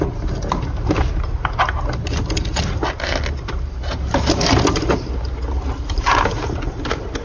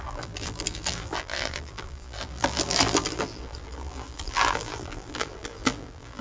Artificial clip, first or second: second